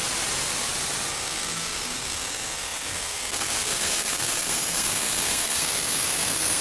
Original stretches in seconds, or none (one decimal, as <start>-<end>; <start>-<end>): 0.0-1.1